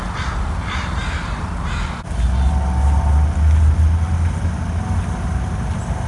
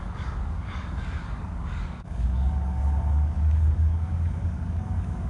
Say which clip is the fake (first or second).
second